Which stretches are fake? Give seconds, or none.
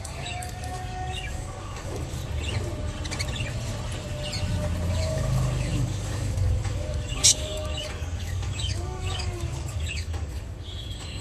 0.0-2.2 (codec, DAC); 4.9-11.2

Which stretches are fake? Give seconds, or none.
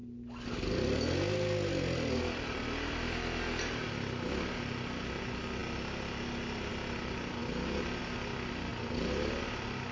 none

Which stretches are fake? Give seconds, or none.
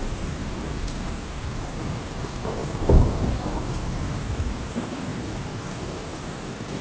0.0-6.8 (codec, DAC)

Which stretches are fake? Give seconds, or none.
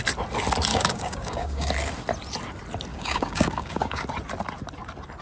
0.7-1.7 (codec, DAC); 2.9-4.0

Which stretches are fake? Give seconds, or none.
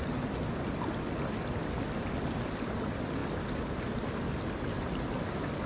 none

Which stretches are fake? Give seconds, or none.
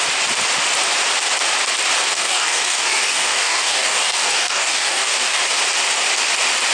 2.1-5.4 (codec, DAC)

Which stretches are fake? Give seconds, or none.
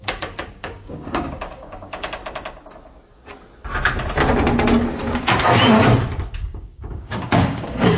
0.0-2.2 (codec, DAC); 6.4-8.0